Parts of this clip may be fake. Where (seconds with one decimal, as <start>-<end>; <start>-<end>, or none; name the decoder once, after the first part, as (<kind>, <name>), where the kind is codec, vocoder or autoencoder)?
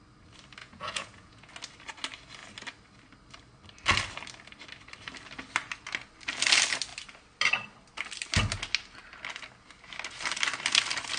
0.6-1.5 (vocoder, Vocos)